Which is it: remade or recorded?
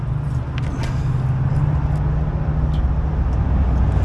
recorded